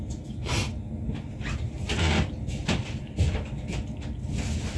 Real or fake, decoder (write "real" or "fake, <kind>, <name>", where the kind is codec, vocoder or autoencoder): real